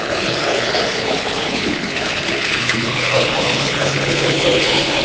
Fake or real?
fake